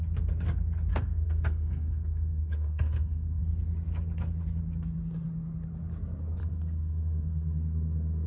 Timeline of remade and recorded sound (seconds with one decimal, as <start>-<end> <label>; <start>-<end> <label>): 0.0-0.9 recorded; 0.9-3.4 remade; 3.4-6.4 recorded; 6.4-8.3 remade

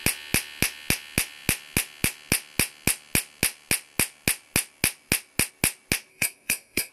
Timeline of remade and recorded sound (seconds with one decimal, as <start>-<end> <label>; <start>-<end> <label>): 0.0-6.1 recorded; 6.1-6.9 remade